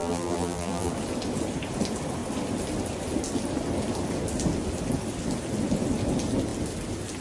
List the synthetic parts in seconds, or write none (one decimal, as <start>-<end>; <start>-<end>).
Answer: 0.0-0.9